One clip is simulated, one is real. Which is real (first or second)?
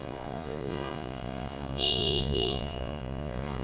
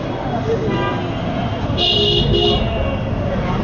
second